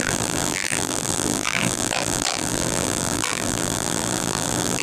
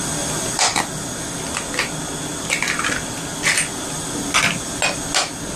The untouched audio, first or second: second